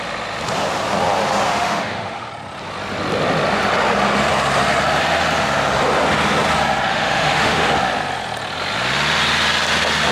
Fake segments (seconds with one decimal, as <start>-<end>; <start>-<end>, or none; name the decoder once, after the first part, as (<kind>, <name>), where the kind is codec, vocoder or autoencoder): 1.5-2.3 (autoencoder, DAC-VAE); 6.9-7.7